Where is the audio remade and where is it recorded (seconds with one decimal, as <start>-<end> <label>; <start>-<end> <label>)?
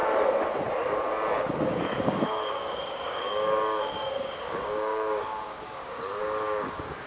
0.0-1.7 recorded; 1.7-7.1 remade